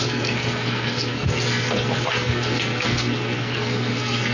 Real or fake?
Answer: fake